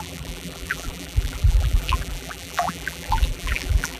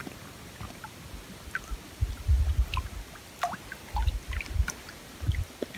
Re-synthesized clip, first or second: first